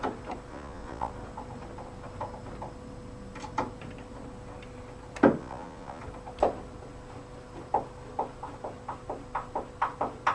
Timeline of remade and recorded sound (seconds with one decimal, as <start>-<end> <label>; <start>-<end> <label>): 0.0-0.5 recorded; 0.5-1.1 remade; 1.1-5.4 recorded; 5.4-6.0 remade; 6.0-10.3 recorded